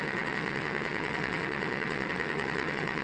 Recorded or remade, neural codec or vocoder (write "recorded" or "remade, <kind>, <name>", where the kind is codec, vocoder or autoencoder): remade, vocoder, WaveNeXt